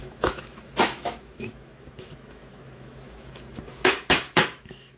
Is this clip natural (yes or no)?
no